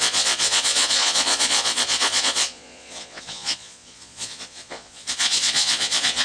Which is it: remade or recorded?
remade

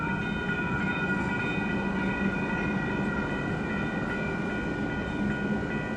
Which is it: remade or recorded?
recorded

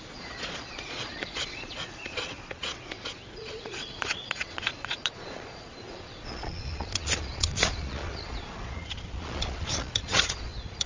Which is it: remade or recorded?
remade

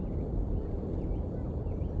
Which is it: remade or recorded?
recorded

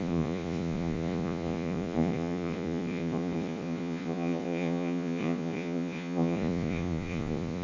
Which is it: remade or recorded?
remade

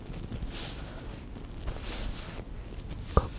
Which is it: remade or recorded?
recorded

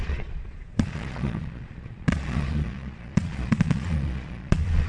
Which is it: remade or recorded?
remade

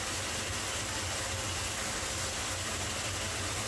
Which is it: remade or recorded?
recorded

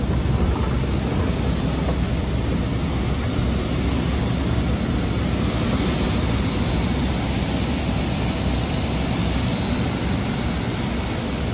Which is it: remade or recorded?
recorded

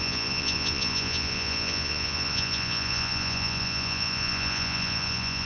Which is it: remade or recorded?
remade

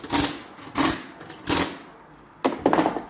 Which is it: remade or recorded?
recorded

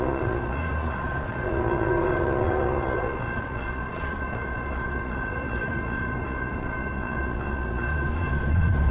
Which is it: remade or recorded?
remade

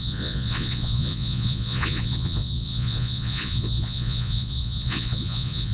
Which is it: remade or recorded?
remade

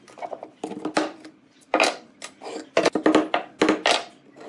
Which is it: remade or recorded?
recorded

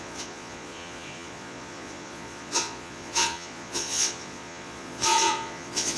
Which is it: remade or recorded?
remade